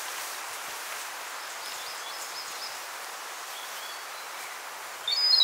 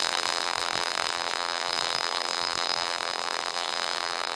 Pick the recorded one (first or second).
first